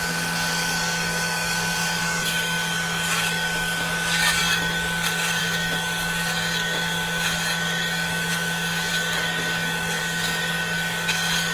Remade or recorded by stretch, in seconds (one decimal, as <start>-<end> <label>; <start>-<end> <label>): 0.0-11.5 remade